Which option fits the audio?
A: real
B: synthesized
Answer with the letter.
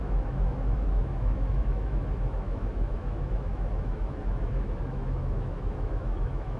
B